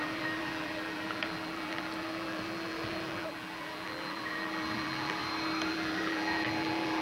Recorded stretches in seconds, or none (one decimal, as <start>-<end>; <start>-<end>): 5.2-5.7